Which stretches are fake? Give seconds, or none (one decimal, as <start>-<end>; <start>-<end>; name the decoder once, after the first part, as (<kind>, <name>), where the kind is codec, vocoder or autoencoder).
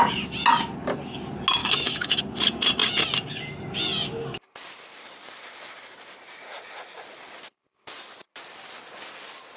1.6-2.2 (autoencoder, DAC-VAE)